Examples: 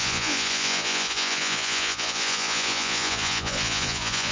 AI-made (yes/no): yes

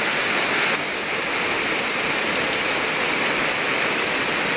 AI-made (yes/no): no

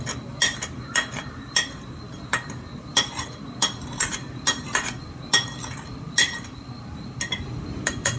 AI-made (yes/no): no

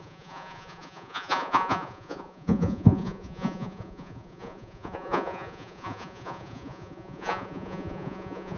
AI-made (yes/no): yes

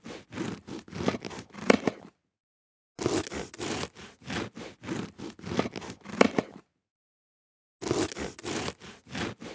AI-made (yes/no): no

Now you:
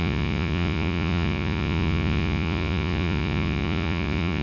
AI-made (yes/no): yes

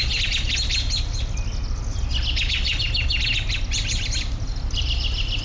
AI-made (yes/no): no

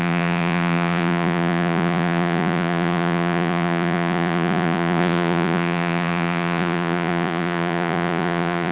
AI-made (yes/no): yes